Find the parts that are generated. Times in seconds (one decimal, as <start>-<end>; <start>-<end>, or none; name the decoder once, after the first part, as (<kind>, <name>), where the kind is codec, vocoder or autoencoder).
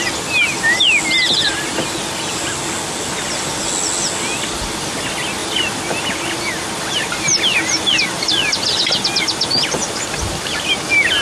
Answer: none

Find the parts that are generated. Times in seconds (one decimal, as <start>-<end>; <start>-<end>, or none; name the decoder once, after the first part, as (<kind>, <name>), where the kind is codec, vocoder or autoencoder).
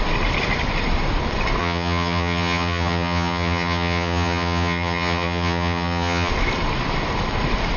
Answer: 1.6-6.3 (vocoder, HiFi-GAN)